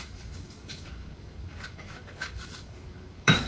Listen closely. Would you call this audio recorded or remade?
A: remade